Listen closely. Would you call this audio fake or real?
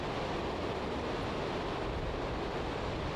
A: real